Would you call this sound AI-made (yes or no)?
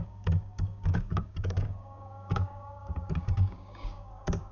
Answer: yes